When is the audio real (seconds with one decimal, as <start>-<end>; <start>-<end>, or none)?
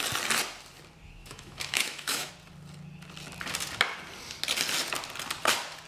0.0-1.2; 2.3-5.9